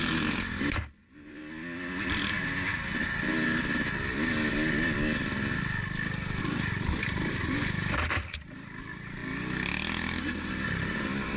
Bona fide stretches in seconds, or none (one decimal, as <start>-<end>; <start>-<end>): 1.4-6.4; 9.2-10.4